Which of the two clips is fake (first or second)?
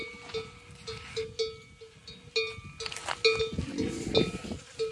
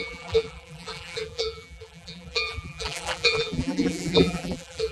second